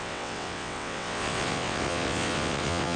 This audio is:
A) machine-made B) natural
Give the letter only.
A